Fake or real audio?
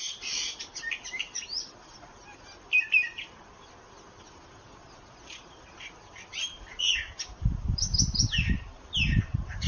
real